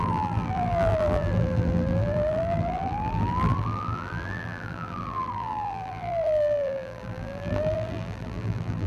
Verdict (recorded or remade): remade